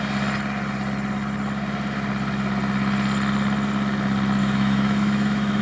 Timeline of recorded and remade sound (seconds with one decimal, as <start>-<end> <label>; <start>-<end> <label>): 0.0-4.4 recorded; 4.4-5.6 remade